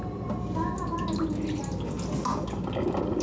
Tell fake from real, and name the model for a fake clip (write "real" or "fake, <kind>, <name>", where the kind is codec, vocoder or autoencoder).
real